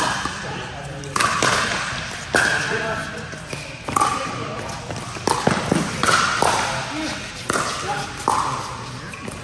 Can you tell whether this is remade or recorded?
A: recorded